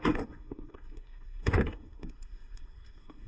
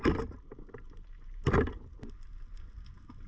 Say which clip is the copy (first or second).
first